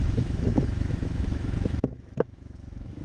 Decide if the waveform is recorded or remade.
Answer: remade